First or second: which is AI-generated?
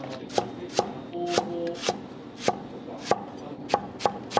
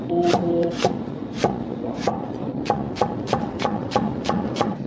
second